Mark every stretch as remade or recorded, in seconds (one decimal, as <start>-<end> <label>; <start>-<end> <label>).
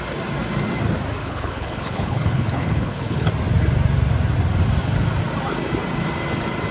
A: 0.0-1.2 recorded; 1.2-3.3 remade; 3.3-6.7 recorded